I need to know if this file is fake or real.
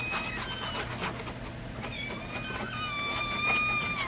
real